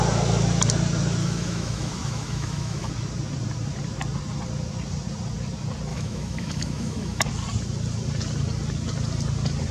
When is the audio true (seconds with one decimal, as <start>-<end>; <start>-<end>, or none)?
0.0-1.2; 2.9-5.9; 7.2-9.7